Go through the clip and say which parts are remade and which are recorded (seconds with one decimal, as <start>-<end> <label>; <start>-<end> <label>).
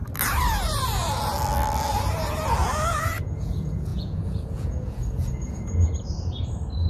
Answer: 0.0-3.2 recorded; 3.2-5.9 remade; 5.9-6.9 recorded